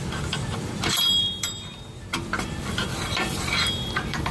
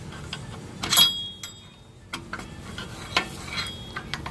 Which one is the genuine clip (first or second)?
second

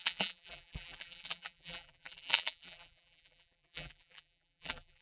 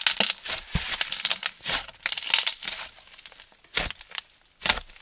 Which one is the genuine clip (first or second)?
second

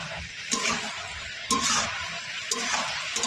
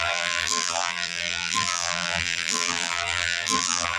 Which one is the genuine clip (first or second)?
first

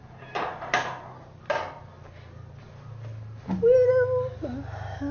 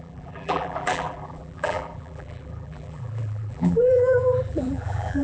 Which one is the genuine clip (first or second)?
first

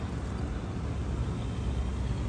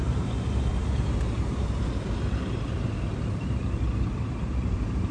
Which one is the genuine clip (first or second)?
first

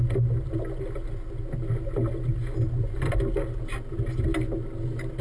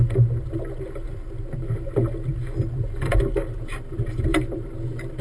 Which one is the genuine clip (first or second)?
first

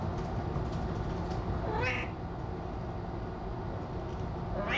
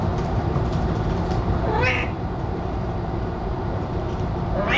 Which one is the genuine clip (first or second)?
first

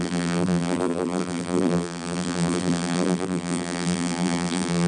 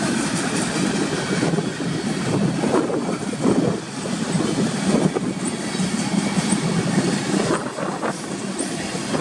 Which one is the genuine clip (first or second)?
second